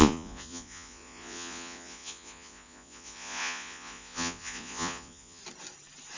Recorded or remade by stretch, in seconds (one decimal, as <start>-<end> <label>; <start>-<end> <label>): 0.0-5.4 remade; 5.4-6.2 recorded